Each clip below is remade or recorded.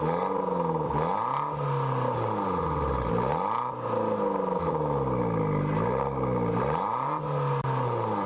recorded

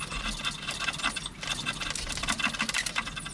recorded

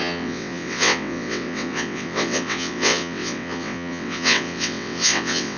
remade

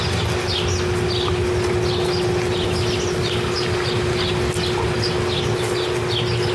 recorded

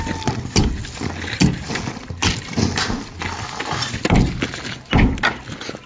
recorded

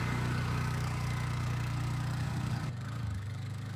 remade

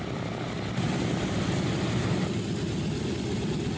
recorded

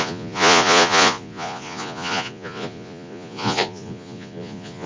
remade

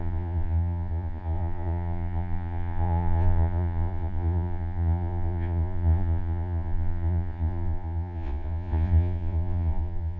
remade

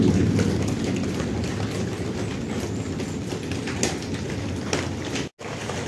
recorded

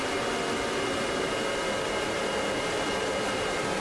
remade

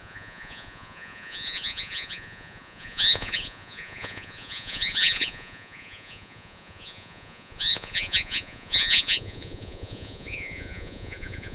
remade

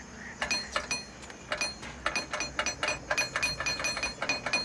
recorded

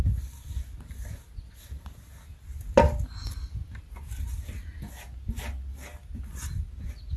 recorded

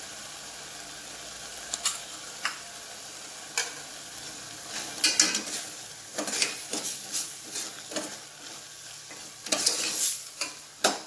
recorded